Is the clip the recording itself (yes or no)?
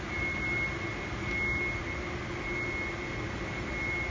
yes